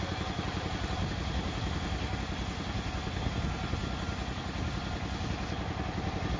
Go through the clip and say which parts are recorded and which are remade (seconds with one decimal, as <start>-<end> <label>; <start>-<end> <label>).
0.0-6.4 recorded